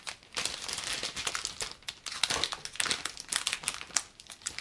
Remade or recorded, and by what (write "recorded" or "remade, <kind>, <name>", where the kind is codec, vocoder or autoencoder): recorded